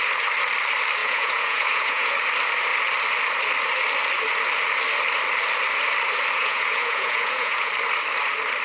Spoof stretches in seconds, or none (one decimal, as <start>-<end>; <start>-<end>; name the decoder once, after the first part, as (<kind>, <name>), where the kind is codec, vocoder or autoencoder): 1.0-2.1 (vocoder, Vocos); 6.4-7.7